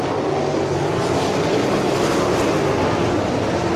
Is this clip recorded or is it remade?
recorded